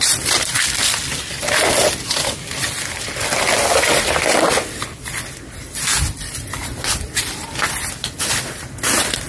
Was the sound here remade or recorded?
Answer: remade